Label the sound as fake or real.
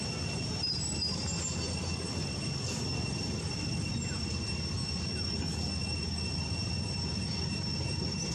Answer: real